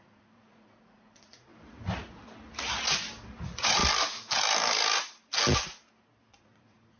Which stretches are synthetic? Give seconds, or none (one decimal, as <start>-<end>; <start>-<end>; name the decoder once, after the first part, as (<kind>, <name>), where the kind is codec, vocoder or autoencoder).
0.0-1.5 (vocoder, Vocos); 3.3-3.8; 6.3-7.0